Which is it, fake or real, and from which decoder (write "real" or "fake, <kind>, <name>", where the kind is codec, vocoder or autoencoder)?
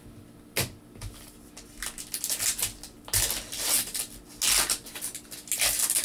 real